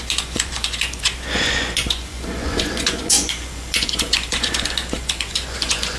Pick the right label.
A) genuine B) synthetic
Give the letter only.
B